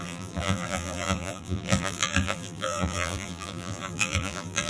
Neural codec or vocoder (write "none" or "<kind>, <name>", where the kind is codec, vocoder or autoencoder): vocoder, BigVGAN v2